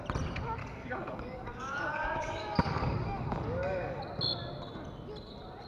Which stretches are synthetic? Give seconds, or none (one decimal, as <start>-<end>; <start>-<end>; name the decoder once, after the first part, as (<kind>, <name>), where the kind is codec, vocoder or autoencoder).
0.6-4.0 (codec, DAC)